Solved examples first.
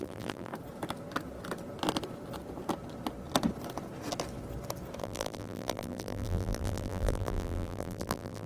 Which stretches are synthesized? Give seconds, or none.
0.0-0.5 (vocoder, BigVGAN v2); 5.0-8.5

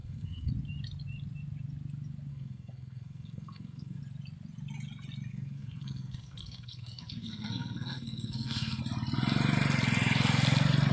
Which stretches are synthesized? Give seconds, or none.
0.0-0.5 (codec, SNAC); 2.3-4.0; 5.3-8.8

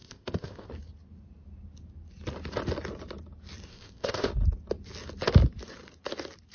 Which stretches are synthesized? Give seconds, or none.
0.0-0.7 (codec, ZipCodec); 3.7-4.3

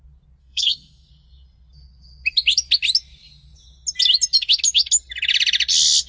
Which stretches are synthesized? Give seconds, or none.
0.4-1.1 (codec, SNAC)

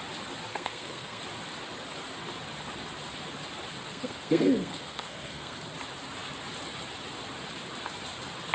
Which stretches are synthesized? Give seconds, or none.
0.5-1.2 (codec, SNAC); 3.8-5.7

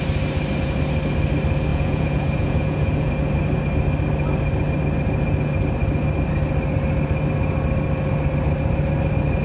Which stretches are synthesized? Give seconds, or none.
1.7-3.1 (vocoder, Vocos)

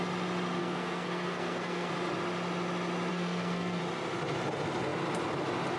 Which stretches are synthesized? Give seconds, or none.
0.6-1.9 (codec, SNAC); 3.1-3.8

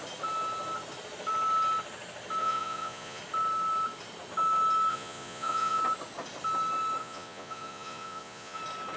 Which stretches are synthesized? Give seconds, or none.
2.4-3.2 (vocoder, Vocos); 4.9-5.8; 7.0-8.6